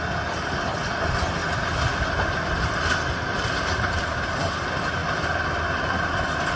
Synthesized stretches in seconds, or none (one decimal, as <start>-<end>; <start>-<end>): 0.0-1.4; 3.3-6.6